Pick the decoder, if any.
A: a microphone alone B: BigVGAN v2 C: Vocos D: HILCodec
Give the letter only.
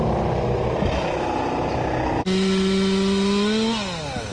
A